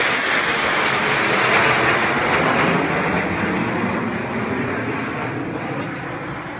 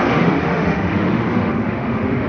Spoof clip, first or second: second